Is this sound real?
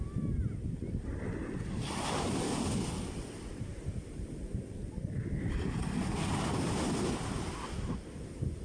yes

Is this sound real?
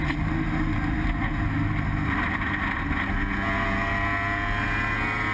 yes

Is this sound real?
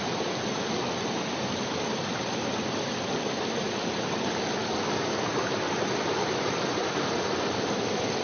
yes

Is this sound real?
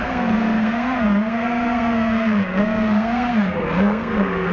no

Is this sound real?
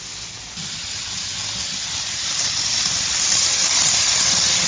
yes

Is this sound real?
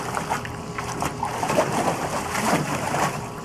no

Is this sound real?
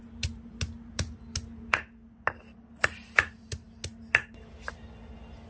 yes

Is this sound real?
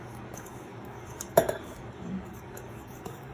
no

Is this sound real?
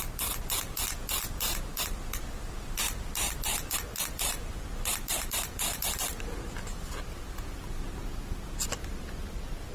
no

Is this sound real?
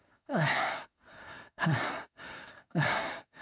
no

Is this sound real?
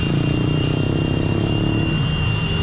yes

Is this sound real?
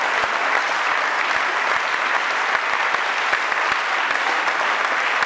yes